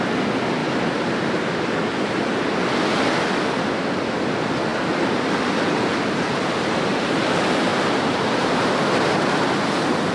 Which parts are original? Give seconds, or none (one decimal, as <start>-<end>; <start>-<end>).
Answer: 0.0-0.6; 2.6-7.7; 8.7-10.1